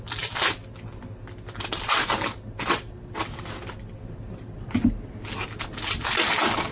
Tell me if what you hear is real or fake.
real